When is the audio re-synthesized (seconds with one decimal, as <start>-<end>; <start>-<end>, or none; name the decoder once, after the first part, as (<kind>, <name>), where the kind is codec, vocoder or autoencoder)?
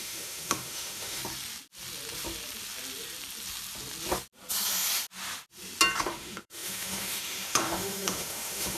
0.0-1.2 (autoencoder, DAC-VAE); 6.0-8.8